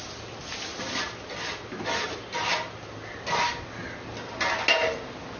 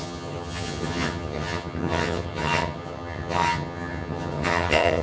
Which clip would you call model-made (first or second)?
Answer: second